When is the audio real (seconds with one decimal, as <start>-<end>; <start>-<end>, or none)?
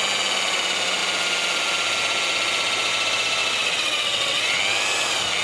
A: 0.0-3.4; 4.6-5.4